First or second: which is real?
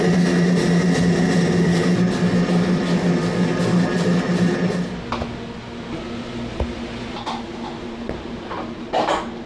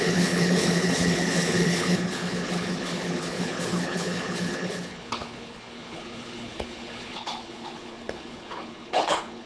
first